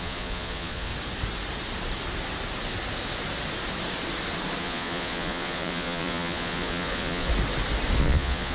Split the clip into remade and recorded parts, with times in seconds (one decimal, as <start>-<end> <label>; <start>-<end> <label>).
0.0-0.9 remade; 0.9-4.6 recorded; 4.6-7.3 remade; 7.3-8.0 recorded; 8.0-8.5 remade